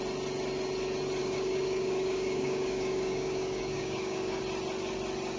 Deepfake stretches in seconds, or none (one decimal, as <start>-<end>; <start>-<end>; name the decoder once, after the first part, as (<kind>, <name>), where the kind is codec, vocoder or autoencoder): 1.2-4.4 (codec, DAC)